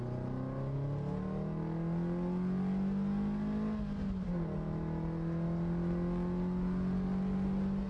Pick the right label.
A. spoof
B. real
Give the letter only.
B